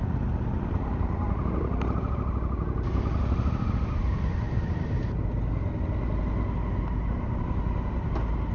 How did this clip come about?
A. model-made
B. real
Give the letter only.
B